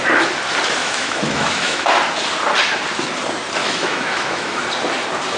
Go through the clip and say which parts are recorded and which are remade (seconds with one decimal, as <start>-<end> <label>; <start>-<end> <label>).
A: 0.0-0.8 recorded; 0.8-1.9 remade; 1.9-3.6 recorded; 3.6-4.6 remade; 4.6-5.4 recorded